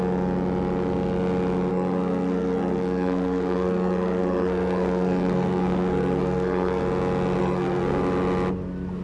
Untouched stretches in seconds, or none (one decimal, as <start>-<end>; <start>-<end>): 0.0-1.7; 6.8-7.4; 8.0-9.0